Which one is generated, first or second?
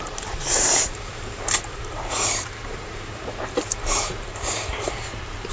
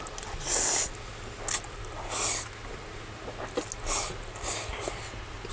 first